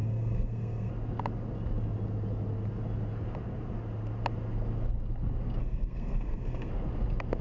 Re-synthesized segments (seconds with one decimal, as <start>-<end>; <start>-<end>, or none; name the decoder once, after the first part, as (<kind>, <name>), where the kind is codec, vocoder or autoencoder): 0.0-0.9 (codec, SNAC); 5.6-6.7